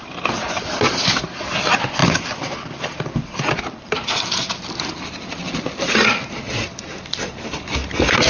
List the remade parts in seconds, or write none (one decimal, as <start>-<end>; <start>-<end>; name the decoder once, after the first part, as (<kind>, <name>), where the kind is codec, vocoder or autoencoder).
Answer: 2.0-6.8 (vocoder, BigVGAN v2)